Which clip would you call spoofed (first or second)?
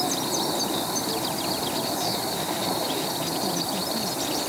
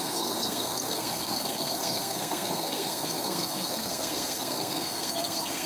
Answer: second